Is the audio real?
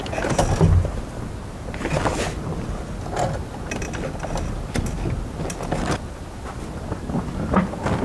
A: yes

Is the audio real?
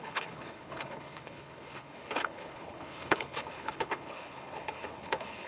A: no